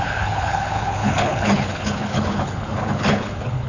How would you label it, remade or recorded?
remade